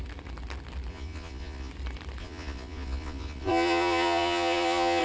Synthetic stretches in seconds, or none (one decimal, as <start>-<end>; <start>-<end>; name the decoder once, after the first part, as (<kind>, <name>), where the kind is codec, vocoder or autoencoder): 0.9-1.7 (vocoder, Vocos); 2.2-5.0